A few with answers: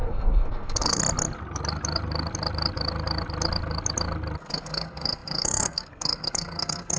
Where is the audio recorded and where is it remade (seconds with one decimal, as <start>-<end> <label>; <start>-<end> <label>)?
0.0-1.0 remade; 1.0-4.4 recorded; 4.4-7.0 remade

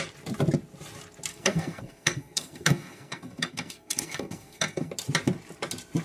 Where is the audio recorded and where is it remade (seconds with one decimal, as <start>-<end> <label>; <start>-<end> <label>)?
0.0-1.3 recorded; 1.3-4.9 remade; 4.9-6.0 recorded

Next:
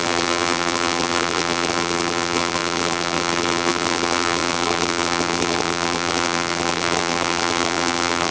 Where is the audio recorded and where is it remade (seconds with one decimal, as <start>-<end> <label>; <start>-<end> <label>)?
0.0-8.3 remade

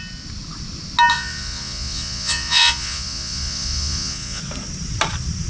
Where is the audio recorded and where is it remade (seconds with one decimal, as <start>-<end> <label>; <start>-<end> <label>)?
0.0-1.1 recorded; 1.1-4.4 remade; 4.4-5.5 recorded